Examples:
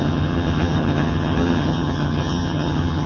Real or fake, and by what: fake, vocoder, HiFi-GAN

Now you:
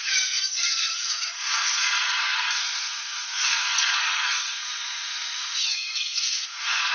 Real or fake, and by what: fake, codec, SNAC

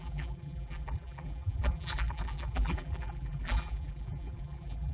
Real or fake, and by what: fake, vocoder, BigVGAN v2